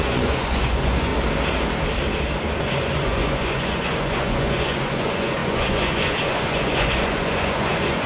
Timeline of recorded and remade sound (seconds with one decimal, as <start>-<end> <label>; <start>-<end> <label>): 0.0-1.1 remade; 1.1-2.6 recorded; 2.6-8.1 remade